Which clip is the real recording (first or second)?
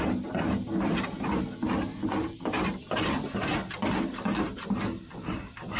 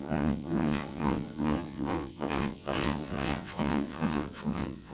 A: first